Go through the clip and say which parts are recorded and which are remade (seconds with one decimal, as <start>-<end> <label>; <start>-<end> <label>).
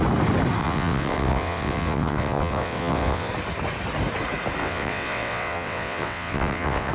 0.0-0.6 recorded; 0.6-3.3 remade; 3.3-4.6 recorded; 4.6-6.9 remade